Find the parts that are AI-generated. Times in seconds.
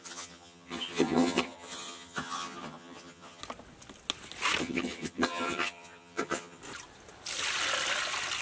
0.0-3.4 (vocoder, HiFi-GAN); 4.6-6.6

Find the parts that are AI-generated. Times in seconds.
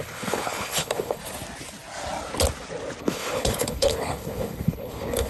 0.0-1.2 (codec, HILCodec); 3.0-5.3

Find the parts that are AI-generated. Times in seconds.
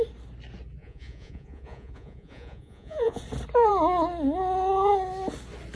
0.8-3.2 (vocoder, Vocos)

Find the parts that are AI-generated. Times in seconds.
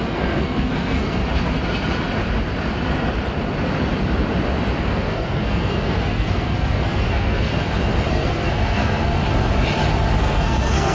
0.0-1.2 (codec, SNAC); 4.8-7.5; 8.1-9.2; 10.2-10.9